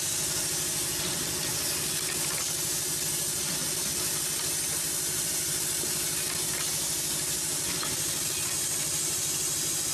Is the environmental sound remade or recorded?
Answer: recorded